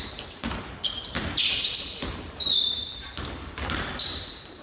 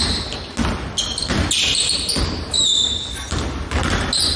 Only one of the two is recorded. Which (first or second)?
second